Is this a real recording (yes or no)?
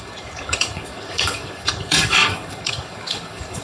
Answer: no